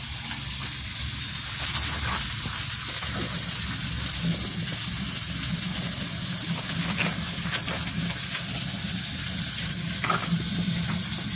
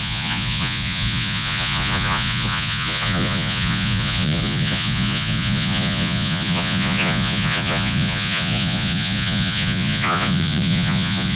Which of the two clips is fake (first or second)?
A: second